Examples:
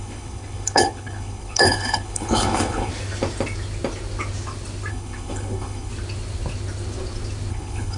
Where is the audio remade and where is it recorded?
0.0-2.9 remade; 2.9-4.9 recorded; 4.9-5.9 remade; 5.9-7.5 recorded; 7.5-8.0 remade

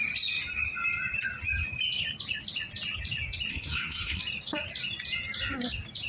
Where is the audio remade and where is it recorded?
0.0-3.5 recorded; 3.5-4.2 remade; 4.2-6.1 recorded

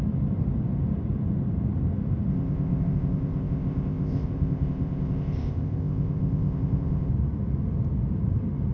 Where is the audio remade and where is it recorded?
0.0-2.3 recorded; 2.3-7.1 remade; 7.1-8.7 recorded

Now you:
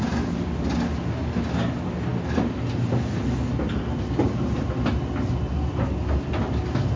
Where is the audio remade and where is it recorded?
0.0-7.0 recorded

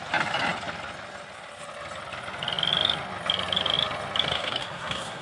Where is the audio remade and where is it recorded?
0.0-4.3 recorded; 4.3-5.2 remade